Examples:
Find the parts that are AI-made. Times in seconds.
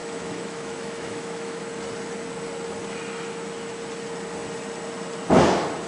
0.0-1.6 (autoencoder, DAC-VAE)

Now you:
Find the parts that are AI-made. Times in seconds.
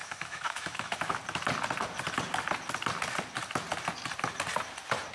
0.0-1.2 (autoencoder, DAC-VAE)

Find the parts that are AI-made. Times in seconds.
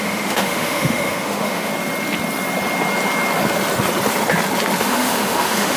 0.0-1.7 (autoencoder, DAC-VAE); 4.8-5.8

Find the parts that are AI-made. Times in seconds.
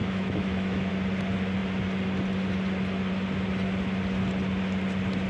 0.0-0.9 (autoencoder, DAC-VAE)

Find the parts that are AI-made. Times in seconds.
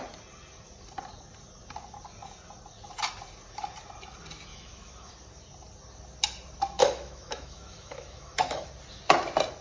4.5-5.1 (autoencoder, DAC-VAE); 6.8-8.7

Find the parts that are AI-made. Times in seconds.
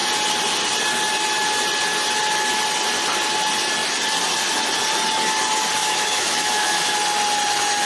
5.8-6.9 (autoencoder, DAC-VAE)